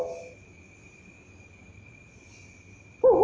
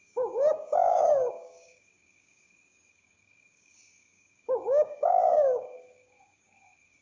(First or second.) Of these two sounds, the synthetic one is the second